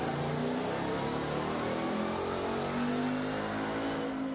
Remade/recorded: recorded